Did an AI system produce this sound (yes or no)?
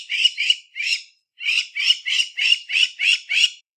yes